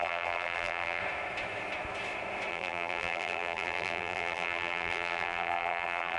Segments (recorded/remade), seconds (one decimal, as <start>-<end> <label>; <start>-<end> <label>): 0.0-1.0 remade; 1.0-2.5 recorded; 2.5-6.2 remade